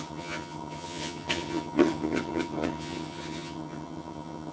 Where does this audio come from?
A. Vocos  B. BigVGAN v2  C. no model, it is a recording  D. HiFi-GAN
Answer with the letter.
D